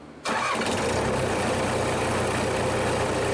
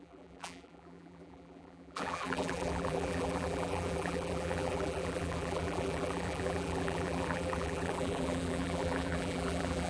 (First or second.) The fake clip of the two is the second